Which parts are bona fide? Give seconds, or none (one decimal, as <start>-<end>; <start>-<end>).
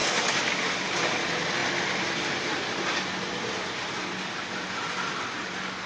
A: 0.0-5.9